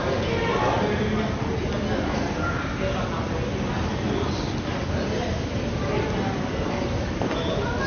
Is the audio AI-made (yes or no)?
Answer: no